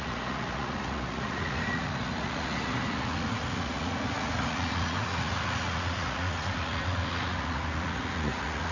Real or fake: fake